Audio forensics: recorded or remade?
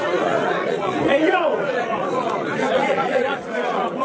remade